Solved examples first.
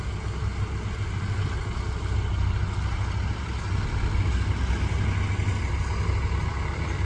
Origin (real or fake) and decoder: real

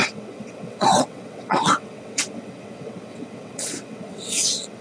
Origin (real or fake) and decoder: fake, vocoder, WaveNeXt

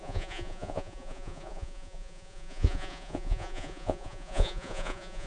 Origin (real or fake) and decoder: fake, vocoder, Vocos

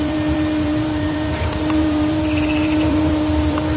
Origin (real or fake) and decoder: fake, vocoder, BigVGAN v2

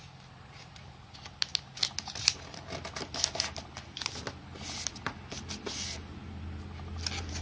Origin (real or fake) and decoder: real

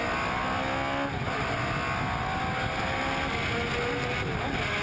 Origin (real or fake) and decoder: real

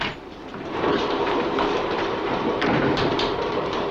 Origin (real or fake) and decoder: fake, vocoder, BigVGAN v2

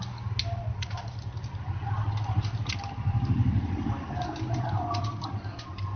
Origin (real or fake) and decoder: real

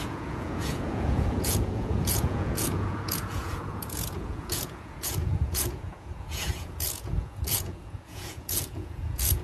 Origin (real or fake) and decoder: fake, vocoder, Vocos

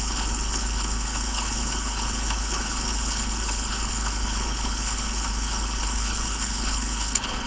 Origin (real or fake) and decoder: fake, codec, HILCodec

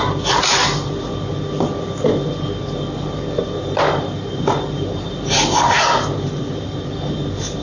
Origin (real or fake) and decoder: real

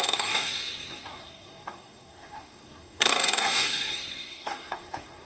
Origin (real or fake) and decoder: fake, codec, SNAC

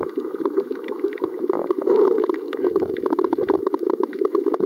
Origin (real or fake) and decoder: fake, autoencoder, DAC-VAE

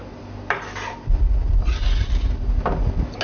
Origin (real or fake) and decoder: real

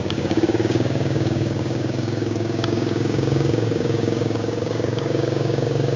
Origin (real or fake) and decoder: fake, codec, DAC